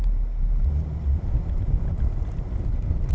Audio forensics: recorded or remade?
recorded